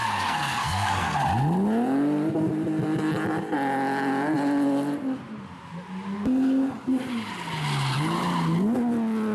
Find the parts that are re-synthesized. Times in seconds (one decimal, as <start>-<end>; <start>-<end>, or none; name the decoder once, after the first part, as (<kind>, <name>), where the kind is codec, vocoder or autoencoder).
0.0-1.2 (codec, SNAC)